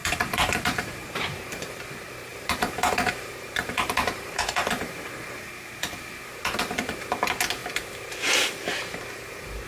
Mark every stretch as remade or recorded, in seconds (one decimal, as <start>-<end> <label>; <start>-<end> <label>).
0.0-1.8 remade; 1.8-2.3 recorded; 2.3-5.5 remade; 5.5-9.7 recorded